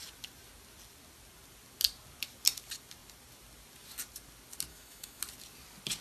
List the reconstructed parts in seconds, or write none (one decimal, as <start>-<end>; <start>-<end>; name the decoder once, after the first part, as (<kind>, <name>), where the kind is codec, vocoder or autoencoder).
4.7-5.2 (autoencoder, DAC-VAE)

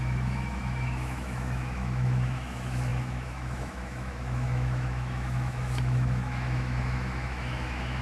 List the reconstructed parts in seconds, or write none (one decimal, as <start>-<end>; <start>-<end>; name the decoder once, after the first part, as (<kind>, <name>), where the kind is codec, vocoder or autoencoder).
0.0-8.0 (autoencoder, DAC-VAE)

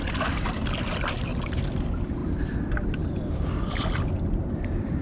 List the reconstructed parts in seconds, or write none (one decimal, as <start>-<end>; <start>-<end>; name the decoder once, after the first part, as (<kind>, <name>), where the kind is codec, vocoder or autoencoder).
0.0-1.3 (vocoder, BigVGAN v2); 1.8-2.2; 3.3-5.0

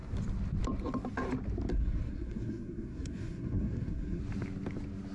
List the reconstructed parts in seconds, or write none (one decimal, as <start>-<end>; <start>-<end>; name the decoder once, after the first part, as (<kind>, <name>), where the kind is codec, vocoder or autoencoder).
1.7-4.2 (codec, SNAC)